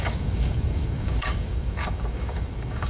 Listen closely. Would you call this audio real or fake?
fake